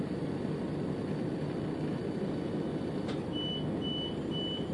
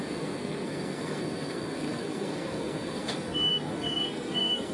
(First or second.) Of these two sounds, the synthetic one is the second